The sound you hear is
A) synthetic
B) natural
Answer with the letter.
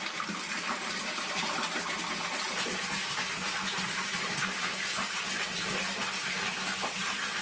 A